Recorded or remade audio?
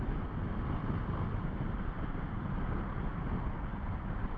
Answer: recorded